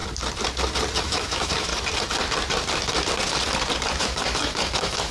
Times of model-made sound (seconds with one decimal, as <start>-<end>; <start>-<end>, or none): 1.0-1.7; 4.0-5.1